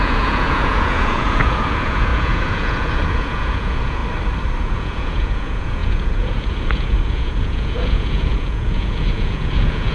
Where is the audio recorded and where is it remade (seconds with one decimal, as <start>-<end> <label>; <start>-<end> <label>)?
0.0-4.0 remade; 4.0-4.6 recorded; 4.6-9.9 remade